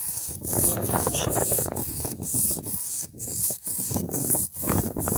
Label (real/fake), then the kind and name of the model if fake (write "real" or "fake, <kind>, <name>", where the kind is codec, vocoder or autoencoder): fake, codec, SNAC